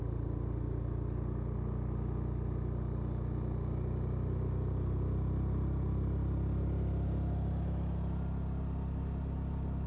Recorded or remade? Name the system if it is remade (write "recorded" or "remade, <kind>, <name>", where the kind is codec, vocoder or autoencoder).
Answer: recorded